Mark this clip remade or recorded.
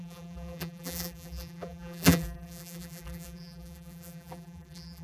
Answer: remade